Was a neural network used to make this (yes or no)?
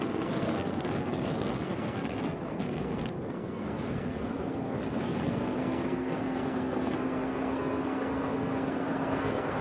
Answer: yes